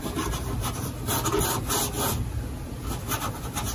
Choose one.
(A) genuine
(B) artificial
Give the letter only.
A